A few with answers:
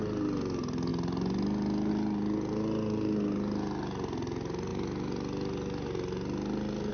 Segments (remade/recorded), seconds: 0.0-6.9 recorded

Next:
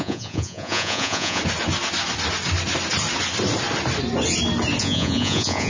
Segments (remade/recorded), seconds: 0.0-1.4 remade; 1.4-4.8 recorded; 4.8-5.7 remade

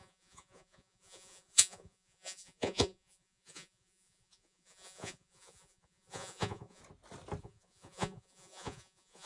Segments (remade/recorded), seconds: 0.0-6.8 remade; 6.8-7.4 recorded; 7.4-9.3 remade

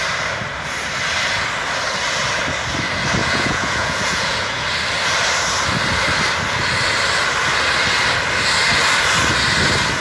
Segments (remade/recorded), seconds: 0.0-3.2 recorded; 3.2-4.5 remade; 4.5-10.0 recorded

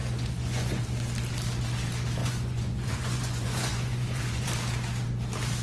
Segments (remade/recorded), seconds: 0.0-0.8 remade; 0.8-2.2 recorded; 2.2-4.5 remade; 4.5-5.6 recorded

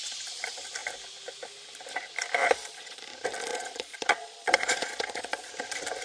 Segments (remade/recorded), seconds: 0.0-2.4 recorded; 2.4-3.0 remade; 3.0-3.5 recorded; 3.5-5.5 remade; 5.5-6.0 recorded

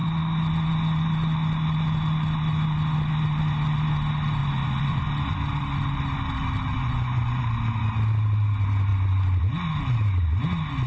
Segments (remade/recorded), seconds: 0.0-4.4 recorded; 4.4-5.0 remade; 5.0-6.7 recorded; 6.7-7.4 remade; 7.4-10.9 recorded